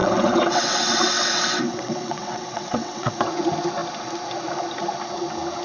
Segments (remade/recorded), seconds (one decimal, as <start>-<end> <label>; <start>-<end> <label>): 0.0-3.1 remade; 3.1-5.6 recorded